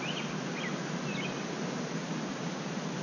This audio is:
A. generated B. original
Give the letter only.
B